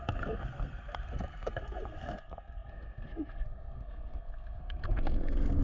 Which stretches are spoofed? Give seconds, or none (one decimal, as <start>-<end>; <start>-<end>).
0.0-5.6